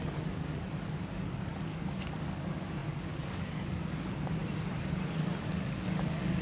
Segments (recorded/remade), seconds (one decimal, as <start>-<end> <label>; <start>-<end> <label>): 0.0-4.4 remade; 4.4-5.4 recorded; 5.4-6.4 remade